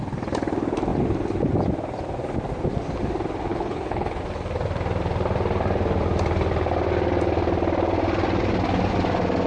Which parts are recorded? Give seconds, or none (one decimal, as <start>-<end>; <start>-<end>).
0.0-3.5; 4.2-9.5